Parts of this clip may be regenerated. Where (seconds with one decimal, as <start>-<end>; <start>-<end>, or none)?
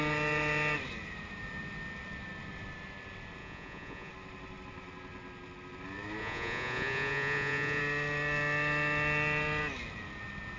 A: 3.4-4.1; 6.2-7.8